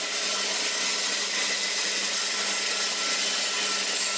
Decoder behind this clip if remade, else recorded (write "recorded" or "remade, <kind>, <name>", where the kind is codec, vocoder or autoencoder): recorded